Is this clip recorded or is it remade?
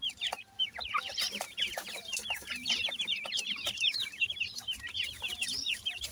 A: remade